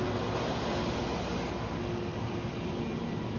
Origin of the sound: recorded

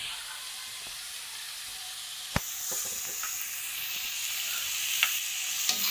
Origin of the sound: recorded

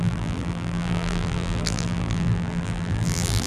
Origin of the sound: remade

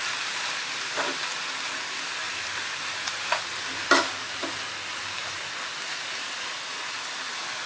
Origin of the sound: recorded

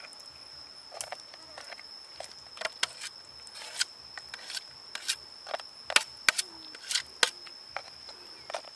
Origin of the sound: recorded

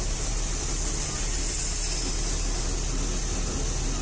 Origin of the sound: recorded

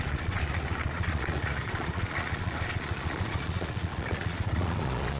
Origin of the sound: remade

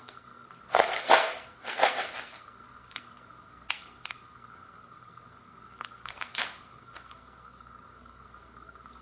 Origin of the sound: remade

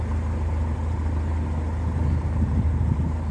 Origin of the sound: recorded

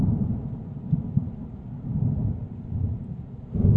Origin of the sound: recorded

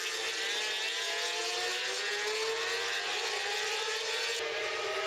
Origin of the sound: recorded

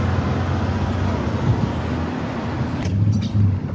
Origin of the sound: recorded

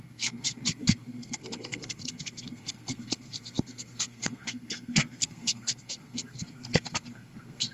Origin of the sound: remade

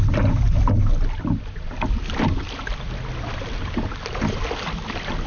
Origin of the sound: recorded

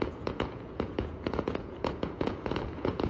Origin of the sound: remade